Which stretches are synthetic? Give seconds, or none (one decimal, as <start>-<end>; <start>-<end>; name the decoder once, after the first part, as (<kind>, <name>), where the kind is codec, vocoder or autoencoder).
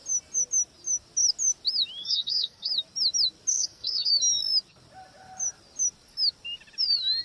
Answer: 2.0-2.7 (codec, SNAC); 3.5-4.1